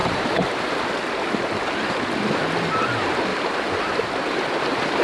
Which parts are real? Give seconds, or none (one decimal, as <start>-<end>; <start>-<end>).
1.1-3.3; 4.2-5.0